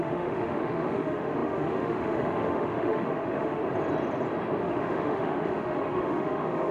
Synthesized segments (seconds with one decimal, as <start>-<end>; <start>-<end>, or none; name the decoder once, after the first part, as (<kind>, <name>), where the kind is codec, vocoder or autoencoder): 0.0-3.6 (autoencoder, DAC-VAE); 4.6-6.7